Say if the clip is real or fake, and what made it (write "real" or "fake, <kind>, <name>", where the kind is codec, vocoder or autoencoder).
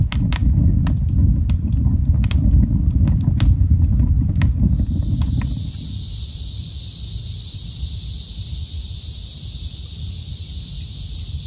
real